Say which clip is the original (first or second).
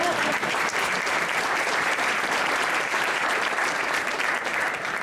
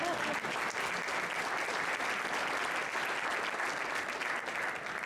second